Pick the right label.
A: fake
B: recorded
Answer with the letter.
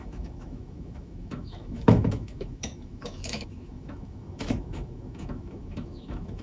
A